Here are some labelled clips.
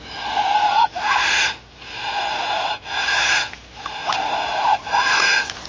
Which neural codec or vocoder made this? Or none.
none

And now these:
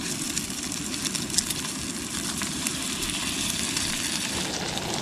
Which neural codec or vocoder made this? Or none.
vocoder, BigVGAN v2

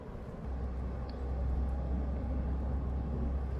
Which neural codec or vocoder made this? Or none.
none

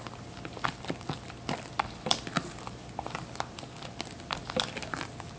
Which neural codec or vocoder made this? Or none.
none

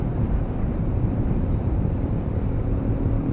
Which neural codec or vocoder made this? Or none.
vocoder, BigVGAN v2